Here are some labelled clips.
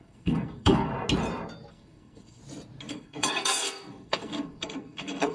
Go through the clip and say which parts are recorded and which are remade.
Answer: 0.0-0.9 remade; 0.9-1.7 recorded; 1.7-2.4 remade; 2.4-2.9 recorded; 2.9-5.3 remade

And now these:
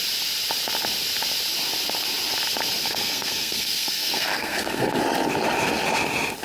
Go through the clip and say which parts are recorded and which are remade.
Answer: 0.0-2.8 recorded; 2.8-5.0 remade; 5.0-6.4 recorded

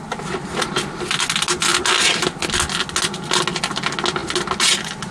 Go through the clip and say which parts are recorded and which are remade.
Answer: 0.0-5.1 recorded

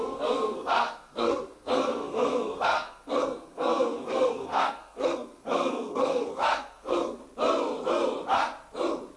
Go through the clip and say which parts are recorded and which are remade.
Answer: 0.0-7.2 remade; 7.2-9.2 recorded

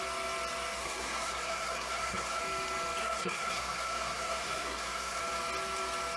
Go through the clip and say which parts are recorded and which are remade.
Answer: 0.0-0.8 recorded; 0.8-2.4 remade; 2.4-3.0 recorded; 3.0-5.2 remade; 5.2-6.2 recorded

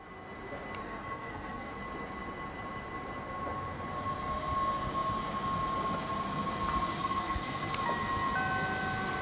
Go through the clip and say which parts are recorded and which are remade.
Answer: 0.0-0.8 recorded; 0.8-1.7 remade; 1.7-7.0 recorded; 7.0-7.7 remade; 7.7-9.2 recorded

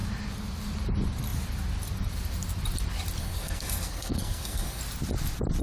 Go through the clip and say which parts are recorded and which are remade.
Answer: 0.0-3.2 recorded; 3.2-4.8 remade; 4.8-5.6 recorded